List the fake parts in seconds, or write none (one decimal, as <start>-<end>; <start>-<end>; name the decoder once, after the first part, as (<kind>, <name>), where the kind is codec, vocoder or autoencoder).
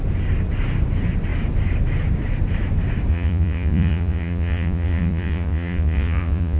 3.1-6.6 (vocoder, Vocos)